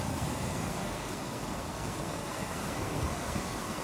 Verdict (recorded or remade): remade